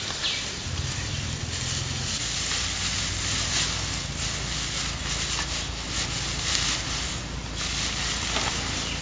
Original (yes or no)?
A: yes